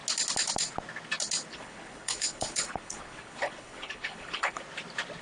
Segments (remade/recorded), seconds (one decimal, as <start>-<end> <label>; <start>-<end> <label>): 0.0-1.5 recorded; 1.5-4.6 remade; 4.6-5.2 recorded